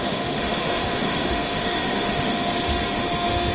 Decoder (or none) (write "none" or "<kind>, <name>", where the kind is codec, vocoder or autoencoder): autoencoder, DAC-VAE